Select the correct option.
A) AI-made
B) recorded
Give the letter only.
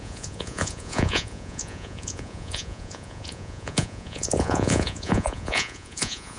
A